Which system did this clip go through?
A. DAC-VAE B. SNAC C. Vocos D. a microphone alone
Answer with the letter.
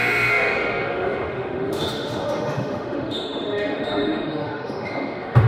A